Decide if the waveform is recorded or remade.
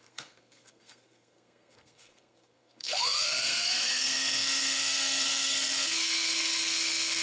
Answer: remade